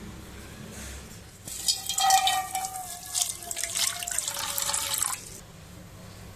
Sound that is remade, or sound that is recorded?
recorded